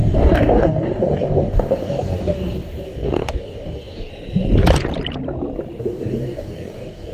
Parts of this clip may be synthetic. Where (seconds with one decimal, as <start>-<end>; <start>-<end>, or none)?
0.0-4.1; 5.8-7.1

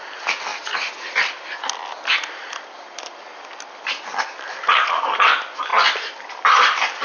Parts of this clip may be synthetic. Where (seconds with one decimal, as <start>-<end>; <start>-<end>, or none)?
none